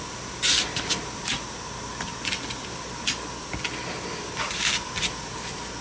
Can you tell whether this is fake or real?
real